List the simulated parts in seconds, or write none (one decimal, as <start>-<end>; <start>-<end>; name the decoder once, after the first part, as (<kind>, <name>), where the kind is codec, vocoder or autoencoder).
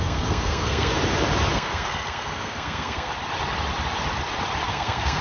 0.0-0.9 (codec, SNAC); 1.5-3.1; 4.7-5.2